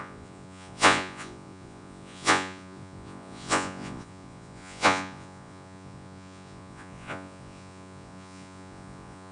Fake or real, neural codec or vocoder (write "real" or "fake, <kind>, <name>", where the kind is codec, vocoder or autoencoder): fake, vocoder, Vocos